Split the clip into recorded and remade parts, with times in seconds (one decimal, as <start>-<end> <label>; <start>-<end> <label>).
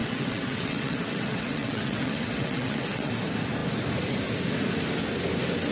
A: 0.0-3.1 remade; 3.1-5.7 recorded